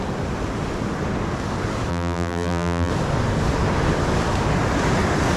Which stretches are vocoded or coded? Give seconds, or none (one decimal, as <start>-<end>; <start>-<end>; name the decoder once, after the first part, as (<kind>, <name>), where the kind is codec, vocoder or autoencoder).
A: 1.9-2.9 (vocoder, BigVGAN v2)